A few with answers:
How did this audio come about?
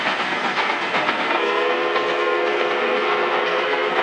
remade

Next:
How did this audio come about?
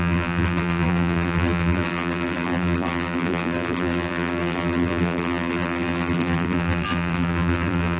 remade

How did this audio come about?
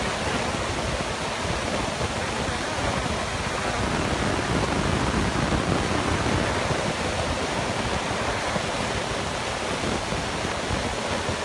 recorded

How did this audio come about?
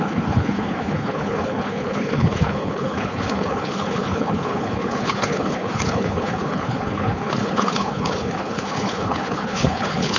remade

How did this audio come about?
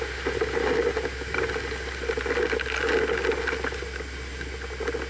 recorded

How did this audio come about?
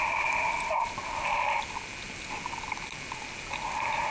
recorded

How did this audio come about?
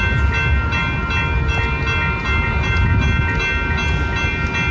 recorded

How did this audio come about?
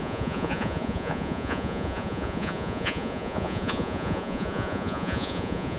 remade